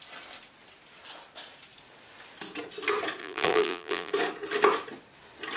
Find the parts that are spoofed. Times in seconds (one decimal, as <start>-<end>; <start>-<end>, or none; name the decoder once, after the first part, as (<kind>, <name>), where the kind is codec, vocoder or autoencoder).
3.2-4.1 (vocoder, BigVGAN v2)